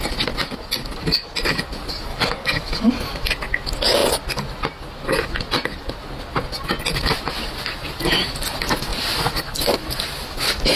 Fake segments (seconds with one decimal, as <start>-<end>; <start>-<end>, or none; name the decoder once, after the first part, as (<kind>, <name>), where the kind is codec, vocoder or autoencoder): 2.1-2.9 (codec, DAC)